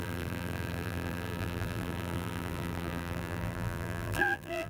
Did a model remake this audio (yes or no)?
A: yes